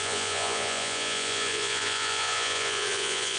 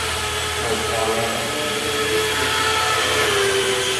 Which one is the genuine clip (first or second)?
second